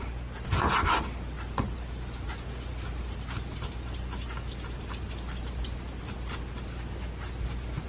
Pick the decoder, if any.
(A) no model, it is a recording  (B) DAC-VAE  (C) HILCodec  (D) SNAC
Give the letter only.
A